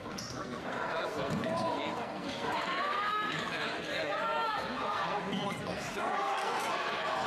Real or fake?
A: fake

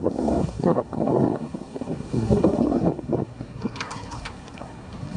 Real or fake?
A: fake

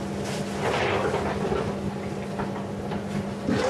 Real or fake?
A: real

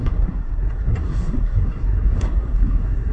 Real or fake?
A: fake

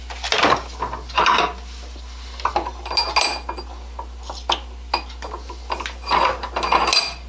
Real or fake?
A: real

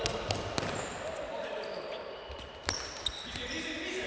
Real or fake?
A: real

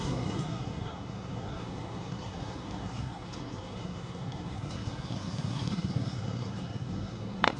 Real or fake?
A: fake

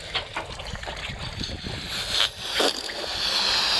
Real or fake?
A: real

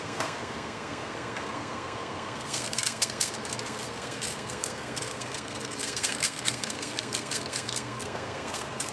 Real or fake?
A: fake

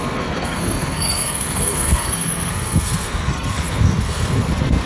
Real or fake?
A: fake